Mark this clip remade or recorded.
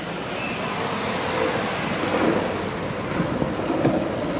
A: recorded